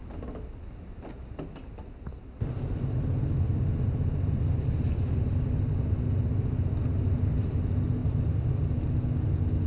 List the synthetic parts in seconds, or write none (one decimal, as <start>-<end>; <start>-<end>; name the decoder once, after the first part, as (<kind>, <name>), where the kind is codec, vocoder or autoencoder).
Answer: none